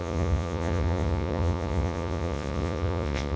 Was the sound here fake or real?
fake